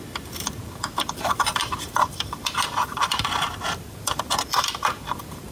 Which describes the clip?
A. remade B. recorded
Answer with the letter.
A